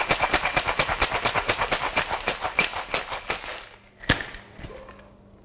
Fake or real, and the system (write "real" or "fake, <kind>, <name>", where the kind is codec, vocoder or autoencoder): real